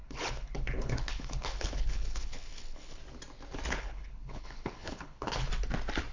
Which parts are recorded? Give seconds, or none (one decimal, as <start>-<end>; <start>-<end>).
3.0-3.7; 5.5-6.1